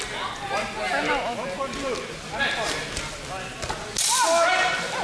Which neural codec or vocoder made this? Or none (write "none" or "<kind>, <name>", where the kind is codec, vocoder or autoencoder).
none